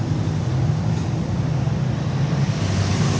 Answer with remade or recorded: recorded